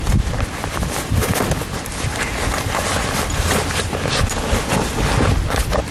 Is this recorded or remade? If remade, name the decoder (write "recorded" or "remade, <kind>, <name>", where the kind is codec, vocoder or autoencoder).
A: recorded